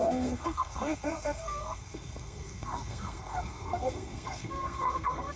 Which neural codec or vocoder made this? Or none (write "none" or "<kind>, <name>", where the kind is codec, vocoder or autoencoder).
codec, SNAC